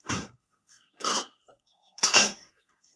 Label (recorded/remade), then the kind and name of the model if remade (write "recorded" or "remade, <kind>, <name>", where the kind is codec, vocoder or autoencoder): remade, codec, SNAC